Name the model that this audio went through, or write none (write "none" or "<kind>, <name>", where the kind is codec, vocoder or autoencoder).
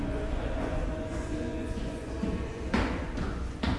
vocoder, Vocos